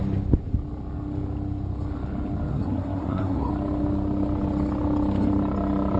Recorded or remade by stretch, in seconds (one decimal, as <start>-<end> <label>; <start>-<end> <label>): 0.0-2.5 recorded; 2.5-3.5 remade; 3.5-6.0 recorded